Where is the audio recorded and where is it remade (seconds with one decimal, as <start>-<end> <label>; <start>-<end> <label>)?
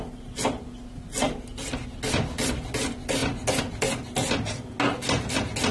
0.0-5.7 recorded